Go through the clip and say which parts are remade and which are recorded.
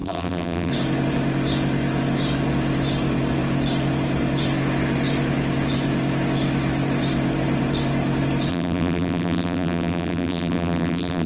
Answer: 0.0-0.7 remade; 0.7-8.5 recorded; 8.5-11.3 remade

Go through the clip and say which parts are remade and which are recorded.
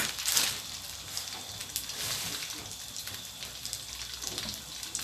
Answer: 0.0-5.0 recorded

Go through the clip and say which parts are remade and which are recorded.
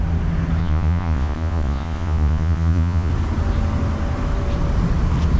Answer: 0.0-0.6 recorded; 0.6-3.1 remade; 3.1-5.4 recorded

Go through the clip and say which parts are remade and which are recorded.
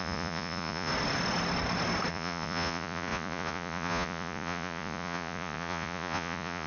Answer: 0.0-0.9 remade; 0.9-2.1 recorded; 2.1-6.7 remade